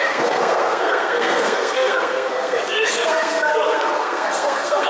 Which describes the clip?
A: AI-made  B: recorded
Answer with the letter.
A